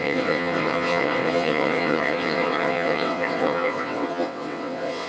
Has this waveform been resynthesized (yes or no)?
yes